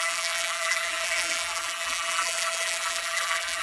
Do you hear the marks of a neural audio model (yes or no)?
yes